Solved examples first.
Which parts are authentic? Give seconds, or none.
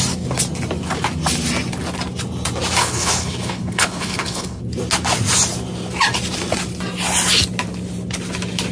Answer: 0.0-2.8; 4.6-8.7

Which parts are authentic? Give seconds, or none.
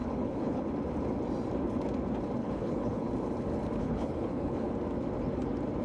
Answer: 0.7-2.4; 3.1-3.8; 4.7-5.8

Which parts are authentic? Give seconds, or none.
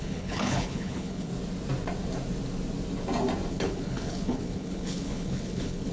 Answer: 1.3-3.5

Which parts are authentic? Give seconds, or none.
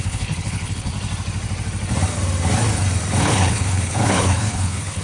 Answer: 0.9-3.2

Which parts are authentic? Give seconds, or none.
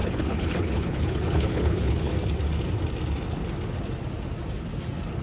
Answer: 2.1-5.2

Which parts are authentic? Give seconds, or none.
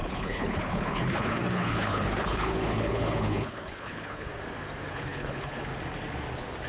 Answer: 4.3-4.9; 5.7-6.7